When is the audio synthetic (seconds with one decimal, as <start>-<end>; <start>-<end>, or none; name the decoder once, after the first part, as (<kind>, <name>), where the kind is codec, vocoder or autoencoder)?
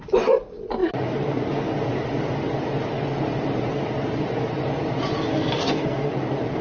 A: 5.3-6.1 (codec, SNAC)